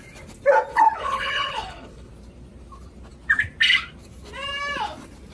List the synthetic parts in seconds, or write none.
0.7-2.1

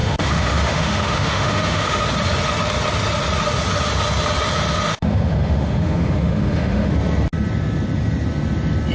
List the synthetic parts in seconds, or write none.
0.0-2.0; 4.9-6.9

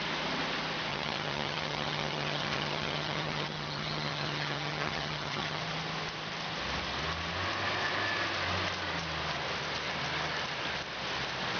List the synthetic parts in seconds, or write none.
0.9-5.6

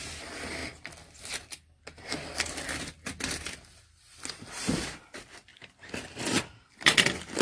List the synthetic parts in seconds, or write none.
none